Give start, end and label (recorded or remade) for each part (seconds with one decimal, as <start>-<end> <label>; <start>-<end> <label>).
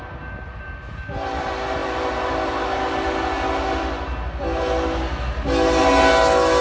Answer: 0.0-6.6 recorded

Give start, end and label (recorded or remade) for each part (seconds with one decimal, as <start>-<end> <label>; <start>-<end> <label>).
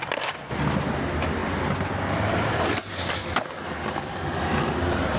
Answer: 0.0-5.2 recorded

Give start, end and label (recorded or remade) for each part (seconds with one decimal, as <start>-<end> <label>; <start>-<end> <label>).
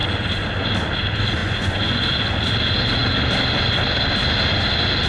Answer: 0.0-1.4 recorded; 1.4-2.0 remade; 2.0-5.1 recorded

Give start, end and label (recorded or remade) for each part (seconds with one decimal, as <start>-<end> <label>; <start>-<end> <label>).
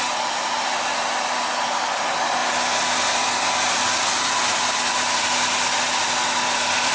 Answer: 0.0-6.9 recorded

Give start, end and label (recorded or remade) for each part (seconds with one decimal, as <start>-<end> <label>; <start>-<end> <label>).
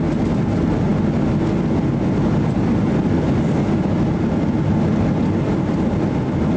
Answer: 0.0-6.6 recorded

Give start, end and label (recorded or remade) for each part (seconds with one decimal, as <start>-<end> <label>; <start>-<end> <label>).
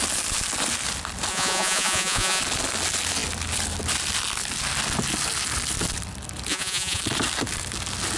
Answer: 0.0-1.3 recorded; 1.3-2.4 remade; 2.4-6.5 recorded; 6.5-7.0 remade; 7.0-8.2 recorded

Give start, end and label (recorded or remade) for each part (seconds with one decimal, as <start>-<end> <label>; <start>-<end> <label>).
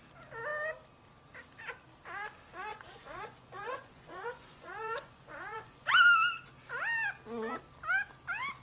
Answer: 0.0-2.7 recorded; 2.7-5.9 remade; 5.9-8.6 recorded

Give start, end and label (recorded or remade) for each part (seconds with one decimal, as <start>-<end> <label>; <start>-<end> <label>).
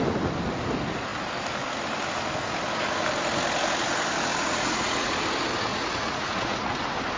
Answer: 0.0-4.3 recorded; 4.3-5.1 remade; 5.1-5.7 recorded; 5.7-6.8 remade; 6.8-7.2 recorded